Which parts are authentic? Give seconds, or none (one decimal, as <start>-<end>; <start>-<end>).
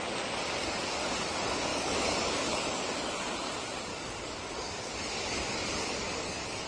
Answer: 0.0-1.7; 3.1-3.9